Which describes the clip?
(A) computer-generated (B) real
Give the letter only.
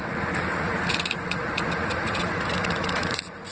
A